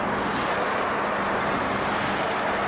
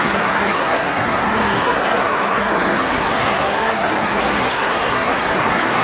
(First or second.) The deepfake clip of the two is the second